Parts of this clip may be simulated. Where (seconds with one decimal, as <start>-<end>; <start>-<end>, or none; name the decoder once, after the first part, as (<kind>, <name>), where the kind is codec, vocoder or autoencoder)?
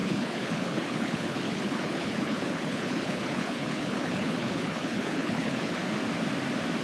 0.0-5.8 (codec, HILCodec)